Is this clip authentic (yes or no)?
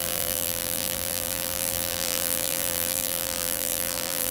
no